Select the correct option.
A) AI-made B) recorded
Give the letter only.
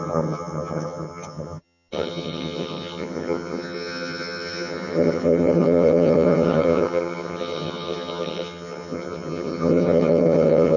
A